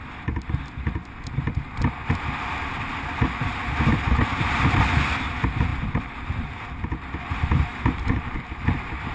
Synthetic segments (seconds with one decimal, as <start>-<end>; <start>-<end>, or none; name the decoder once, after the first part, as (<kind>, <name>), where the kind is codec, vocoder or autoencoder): none